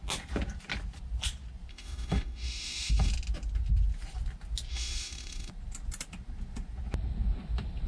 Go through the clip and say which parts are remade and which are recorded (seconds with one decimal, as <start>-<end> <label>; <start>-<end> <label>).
0.0-1.7 recorded; 1.7-3.1 remade; 3.1-4.7 recorded; 4.7-5.5 remade; 5.5-7.9 recorded